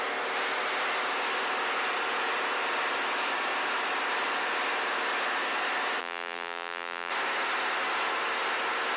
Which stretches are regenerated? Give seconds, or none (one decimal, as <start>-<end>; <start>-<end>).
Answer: 6.0-7.1